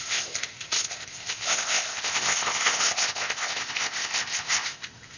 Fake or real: fake